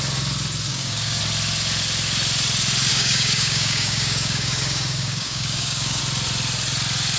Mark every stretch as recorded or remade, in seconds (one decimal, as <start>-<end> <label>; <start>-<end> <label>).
0.0-0.7 recorded; 0.7-1.2 remade; 1.2-2.9 recorded; 2.9-6.0 remade; 6.0-7.2 recorded